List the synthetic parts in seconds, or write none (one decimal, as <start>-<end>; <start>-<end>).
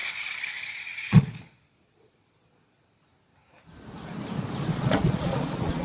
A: 0.7-3.1; 4.7-5.8